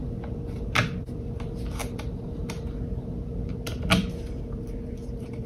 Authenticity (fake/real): real